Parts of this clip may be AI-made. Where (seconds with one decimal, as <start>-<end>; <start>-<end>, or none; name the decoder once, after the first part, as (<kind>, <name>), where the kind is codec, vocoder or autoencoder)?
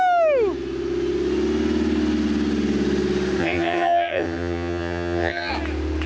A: 3.4-5.5 (vocoder, HiFi-GAN)